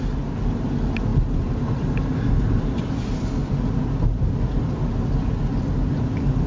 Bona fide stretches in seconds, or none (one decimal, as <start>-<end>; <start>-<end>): 0.0-6.5